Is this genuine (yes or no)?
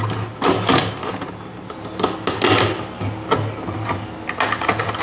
yes